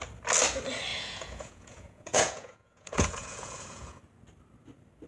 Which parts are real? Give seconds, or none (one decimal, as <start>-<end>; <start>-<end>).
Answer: 0.0-0.9; 4.0-5.1

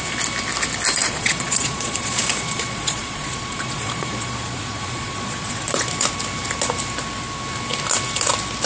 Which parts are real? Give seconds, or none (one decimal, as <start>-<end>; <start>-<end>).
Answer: 0.0-1.0; 5.9-8.7